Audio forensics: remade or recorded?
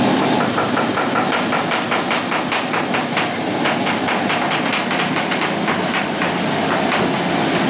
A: recorded